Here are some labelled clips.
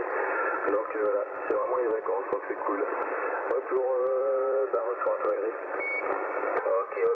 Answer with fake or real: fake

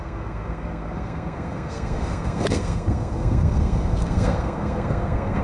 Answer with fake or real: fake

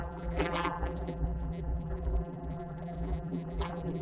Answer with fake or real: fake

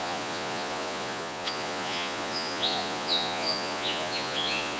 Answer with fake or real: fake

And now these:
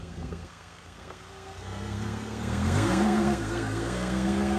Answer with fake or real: fake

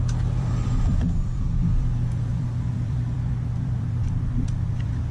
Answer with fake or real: fake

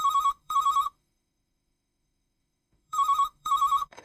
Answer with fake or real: fake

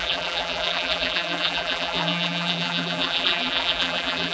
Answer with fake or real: fake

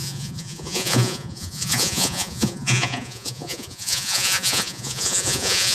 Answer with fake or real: fake